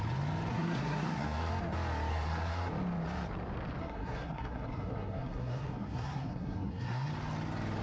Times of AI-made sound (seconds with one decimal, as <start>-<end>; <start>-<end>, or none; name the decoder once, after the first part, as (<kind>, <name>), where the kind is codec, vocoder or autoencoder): 0.5-1.5 (codec, SNAC); 2.1-2.7; 3.8-7.1